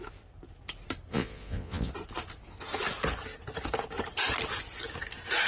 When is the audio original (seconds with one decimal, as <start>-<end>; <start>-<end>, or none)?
0.0-1.1; 1.9-5.5